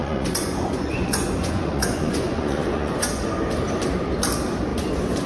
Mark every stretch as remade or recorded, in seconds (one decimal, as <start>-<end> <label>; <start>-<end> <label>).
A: 0.0-3.2 remade; 3.2-5.3 recorded